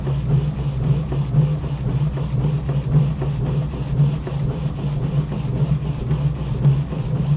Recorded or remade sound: recorded